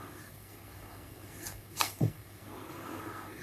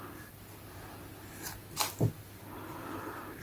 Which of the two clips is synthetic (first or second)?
first